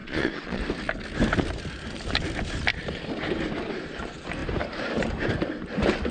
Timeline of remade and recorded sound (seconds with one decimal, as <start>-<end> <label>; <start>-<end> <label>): 0.0-0.6 remade; 0.6-6.1 recorded

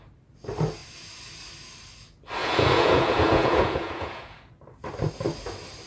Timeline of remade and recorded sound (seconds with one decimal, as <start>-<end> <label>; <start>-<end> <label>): 0.0-2.4 recorded; 2.4-4.5 remade; 4.5-5.9 recorded

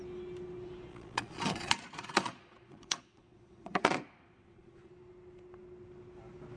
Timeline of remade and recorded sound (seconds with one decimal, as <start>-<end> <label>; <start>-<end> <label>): 0.0-0.9 recorded; 0.9-4.9 remade; 4.9-6.6 recorded

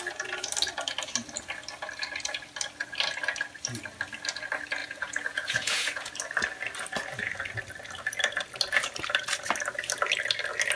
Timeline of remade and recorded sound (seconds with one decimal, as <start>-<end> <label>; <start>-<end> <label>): 0.0-4.8 recorded; 4.8-6.1 remade; 6.1-10.8 recorded

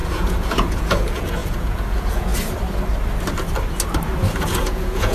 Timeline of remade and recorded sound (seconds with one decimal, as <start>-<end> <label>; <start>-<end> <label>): 0.0-2.3 remade; 2.3-4.3 recorded; 4.3-5.1 remade